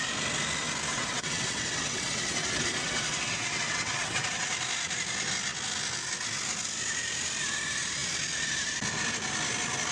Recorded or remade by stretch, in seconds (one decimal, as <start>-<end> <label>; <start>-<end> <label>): 0.0-0.9 recorded; 0.9-4.5 remade; 4.5-9.9 recorded